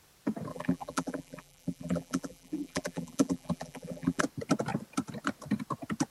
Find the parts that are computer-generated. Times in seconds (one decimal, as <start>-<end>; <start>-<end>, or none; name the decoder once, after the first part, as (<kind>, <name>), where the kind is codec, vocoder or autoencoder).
0.5-4.2 (vocoder, BigVGAN v2)